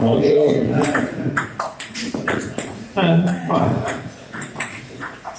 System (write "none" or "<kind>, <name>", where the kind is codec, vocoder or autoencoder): vocoder, Vocos